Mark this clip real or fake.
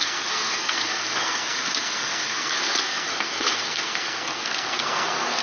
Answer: fake